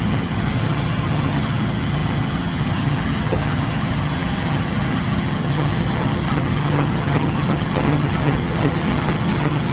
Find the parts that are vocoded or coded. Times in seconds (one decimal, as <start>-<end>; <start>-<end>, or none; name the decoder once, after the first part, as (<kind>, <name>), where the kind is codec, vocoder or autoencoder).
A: 0.0-9.7 (vocoder, HiFi-GAN)